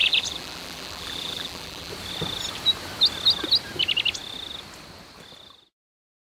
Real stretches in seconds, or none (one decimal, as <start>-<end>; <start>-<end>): 1.9-6.4